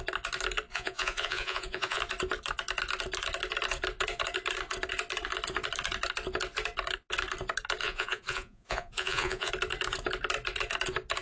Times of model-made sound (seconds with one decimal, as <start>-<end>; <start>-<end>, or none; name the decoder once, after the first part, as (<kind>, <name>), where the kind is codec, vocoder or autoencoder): 0.7-2.0 (vocoder, Vocos); 7.8-9.5